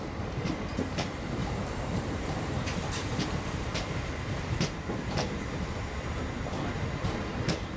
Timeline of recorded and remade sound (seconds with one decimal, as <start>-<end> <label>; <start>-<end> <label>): 0.0-1.4 recorded; 1.4-6.1 remade; 6.1-7.8 recorded

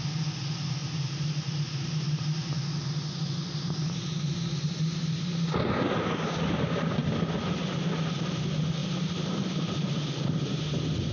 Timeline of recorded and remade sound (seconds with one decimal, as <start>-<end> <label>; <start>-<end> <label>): 0.0-11.1 recorded

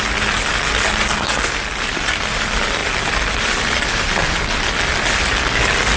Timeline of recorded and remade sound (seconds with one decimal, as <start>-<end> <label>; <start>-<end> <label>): 0.0-6.0 recorded

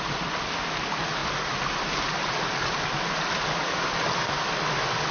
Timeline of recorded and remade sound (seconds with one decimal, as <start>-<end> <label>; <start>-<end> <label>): 0.0-5.1 recorded

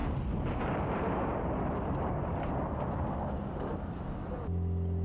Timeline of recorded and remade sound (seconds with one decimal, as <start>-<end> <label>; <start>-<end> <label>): 0.0-5.0 recorded

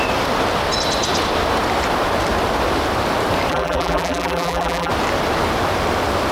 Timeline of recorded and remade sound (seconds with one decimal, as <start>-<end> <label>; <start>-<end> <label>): 0.0-3.5 recorded; 3.5-4.9 remade; 4.9-6.3 recorded

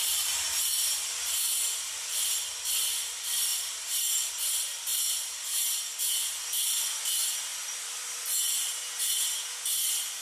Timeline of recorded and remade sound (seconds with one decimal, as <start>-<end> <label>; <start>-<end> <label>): 0.0-2.4 remade; 2.4-3.5 recorded; 3.5-4.3 remade; 4.3-4.9 recorded; 4.9-5.8 remade; 5.8-10.2 recorded